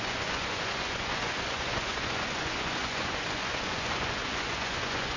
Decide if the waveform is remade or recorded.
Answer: remade